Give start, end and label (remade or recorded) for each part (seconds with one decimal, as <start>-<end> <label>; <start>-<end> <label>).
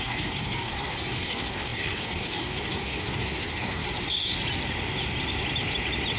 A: 0.0-3.8 remade; 3.8-6.2 recorded